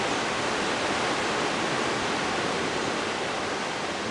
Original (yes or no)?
yes